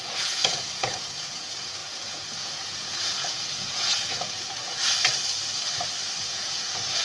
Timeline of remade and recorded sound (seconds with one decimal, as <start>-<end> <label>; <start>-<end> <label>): 0.0-4.8 remade; 4.8-6.2 recorded; 6.2-7.0 remade